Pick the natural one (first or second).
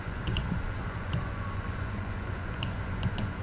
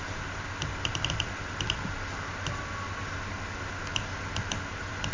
second